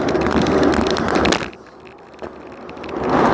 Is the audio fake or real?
real